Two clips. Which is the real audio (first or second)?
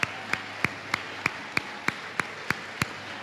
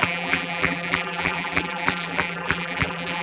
first